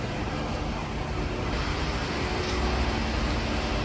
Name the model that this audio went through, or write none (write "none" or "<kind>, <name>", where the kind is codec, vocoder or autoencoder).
none